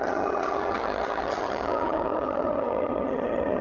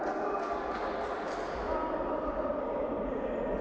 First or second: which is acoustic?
second